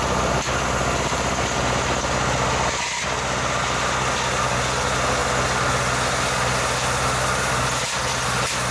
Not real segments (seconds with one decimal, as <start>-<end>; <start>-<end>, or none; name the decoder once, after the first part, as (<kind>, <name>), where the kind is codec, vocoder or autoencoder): none